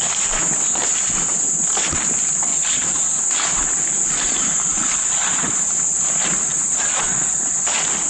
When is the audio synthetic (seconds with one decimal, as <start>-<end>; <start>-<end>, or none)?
2.5-3.2; 4.7-5.7; 6.5-7.4